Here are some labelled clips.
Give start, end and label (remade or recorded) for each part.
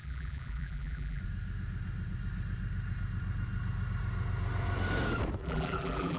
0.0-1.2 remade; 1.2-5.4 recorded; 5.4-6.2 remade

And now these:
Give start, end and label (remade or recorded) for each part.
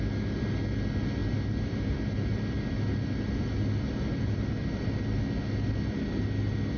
0.0-1.2 recorded; 1.2-5.2 remade; 5.2-6.8 recorded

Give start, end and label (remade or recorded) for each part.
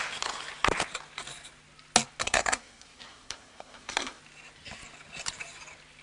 0.0-2.2 recorded; 2.2-4.2 remade; 4.2-6.0 recorded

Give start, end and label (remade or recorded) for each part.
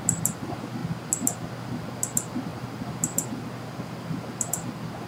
0.0-5.1 recorded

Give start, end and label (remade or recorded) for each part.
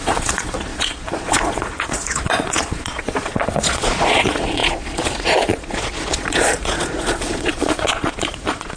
0.0-8.8 remade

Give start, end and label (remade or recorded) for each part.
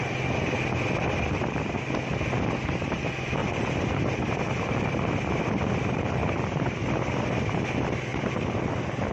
0.0-3.4 recorded; 3.4-5.3 remade; 5.3-8.1 recorded; 8.1-8.7 remade; 8.7-9.1 recorded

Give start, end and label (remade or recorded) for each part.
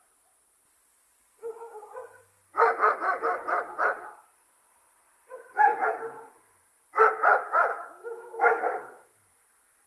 0.0-7.7 recorded; 7.7-8.6 remade; 8.6-9.9 recorded